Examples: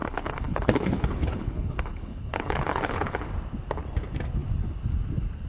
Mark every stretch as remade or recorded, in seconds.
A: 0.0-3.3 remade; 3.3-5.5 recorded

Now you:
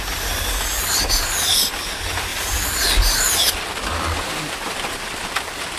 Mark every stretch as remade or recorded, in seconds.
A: 0.0-2.3 recorded; 2.3-5.8 remade

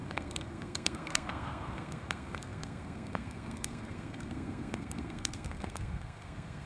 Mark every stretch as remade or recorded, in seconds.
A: 0.0-6.7 remade

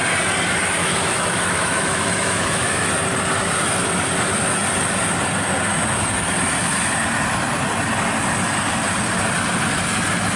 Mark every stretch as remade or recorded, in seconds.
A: 0.0-0.8 recorded; 0.8-2.9 remade; 2.9-10.4 recorded

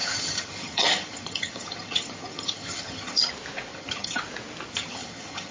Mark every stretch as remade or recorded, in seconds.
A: 0.0-3.3 remade; 3.3-3.7 recorded; 3.7-4.2 remade; 4.2-4.7 recorded; 4.7-5.5 remade

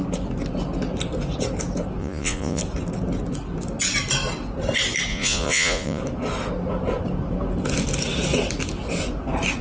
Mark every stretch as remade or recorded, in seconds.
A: 0.0-2.0 recorded; 2.0-2.6 remade; 2.6-5.1 recorded; 5.1-6.0 remade; 6.0-9.6 recorded

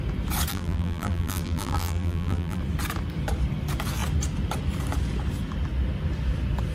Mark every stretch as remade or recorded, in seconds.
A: 0.0-0.5 recorded; 0.5-2.6 remade; 2.6-6.7 recorded

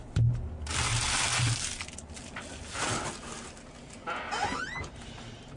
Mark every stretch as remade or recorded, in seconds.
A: 0.0-5.6 recorded